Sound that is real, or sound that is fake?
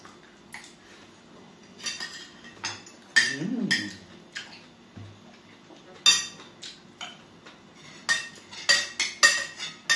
real